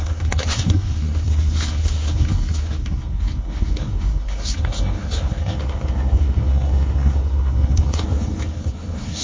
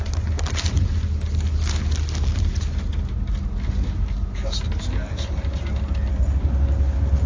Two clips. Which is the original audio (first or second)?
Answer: second